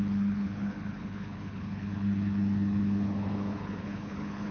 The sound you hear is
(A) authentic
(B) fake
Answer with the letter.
B